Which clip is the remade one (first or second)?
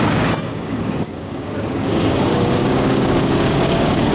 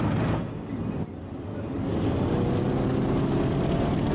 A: first